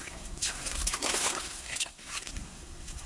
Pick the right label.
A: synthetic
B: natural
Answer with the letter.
A